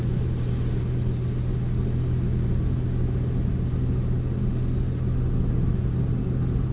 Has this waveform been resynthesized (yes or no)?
no